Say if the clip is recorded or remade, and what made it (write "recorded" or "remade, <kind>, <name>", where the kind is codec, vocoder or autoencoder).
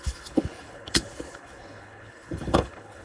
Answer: remade, codec, HILCodec